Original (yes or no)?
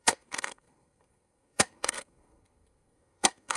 no